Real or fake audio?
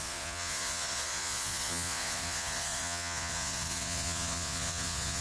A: fake